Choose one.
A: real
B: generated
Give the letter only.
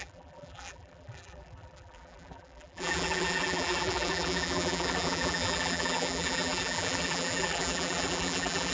B